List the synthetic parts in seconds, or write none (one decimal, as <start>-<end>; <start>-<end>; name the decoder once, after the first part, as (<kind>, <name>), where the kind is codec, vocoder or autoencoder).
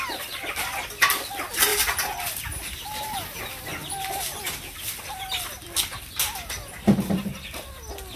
none